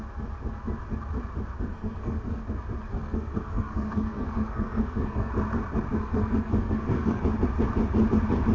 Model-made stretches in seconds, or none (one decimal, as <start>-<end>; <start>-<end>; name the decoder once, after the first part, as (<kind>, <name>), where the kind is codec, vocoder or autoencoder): 1.7-2.4 (codec, SNAC); 2.9-5.3; 6.0-7.2